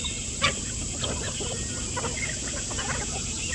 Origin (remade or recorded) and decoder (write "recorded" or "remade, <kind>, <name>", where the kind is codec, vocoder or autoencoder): recorded